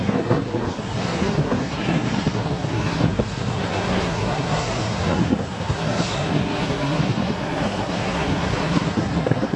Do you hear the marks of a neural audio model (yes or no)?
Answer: yes